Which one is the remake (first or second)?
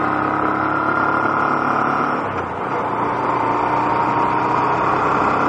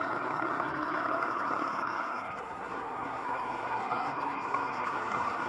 second